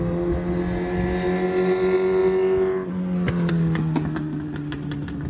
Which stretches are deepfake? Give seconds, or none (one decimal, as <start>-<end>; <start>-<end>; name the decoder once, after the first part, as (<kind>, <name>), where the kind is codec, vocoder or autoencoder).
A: none